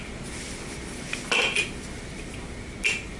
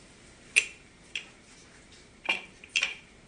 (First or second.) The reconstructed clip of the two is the second